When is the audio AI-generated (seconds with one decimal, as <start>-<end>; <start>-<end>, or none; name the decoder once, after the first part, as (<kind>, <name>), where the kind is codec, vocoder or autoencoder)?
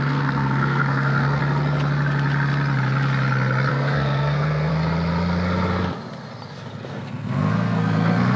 0.0-1.4 (codec, SNAC); 3.7-4.7; 6.9-8.4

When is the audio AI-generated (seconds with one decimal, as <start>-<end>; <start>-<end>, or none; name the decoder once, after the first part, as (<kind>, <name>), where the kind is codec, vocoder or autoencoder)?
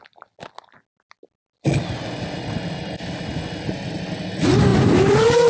none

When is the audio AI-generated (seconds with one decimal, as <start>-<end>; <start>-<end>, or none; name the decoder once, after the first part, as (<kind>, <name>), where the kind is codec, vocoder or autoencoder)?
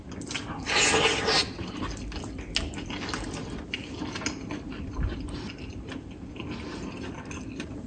none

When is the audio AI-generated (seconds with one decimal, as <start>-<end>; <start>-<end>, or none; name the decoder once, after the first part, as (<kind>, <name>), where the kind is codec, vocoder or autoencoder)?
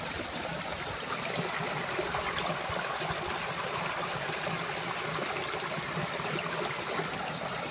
none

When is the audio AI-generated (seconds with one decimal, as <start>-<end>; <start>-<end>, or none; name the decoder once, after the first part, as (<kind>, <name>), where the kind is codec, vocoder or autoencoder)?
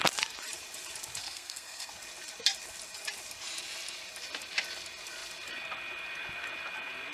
1.2-1.9 (codec, SNAC)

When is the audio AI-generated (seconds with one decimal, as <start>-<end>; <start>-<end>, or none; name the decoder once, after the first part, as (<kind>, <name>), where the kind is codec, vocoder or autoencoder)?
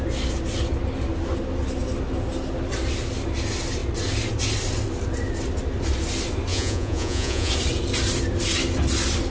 6.5-7.5 (vocoder, Vocos)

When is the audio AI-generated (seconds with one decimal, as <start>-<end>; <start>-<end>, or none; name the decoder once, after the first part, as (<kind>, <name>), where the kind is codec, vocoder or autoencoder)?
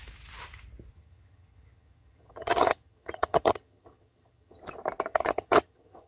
0.9-4.6 (vocoder, HiFi-GAN); 5.1-6.1